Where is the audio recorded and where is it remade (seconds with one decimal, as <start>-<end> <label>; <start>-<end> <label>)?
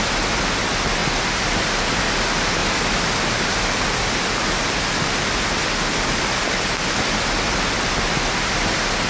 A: 0.0-9.1 recorded